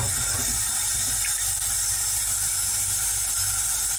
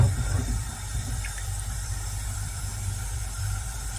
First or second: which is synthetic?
second